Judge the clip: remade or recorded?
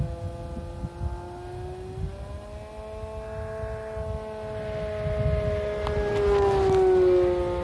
recorded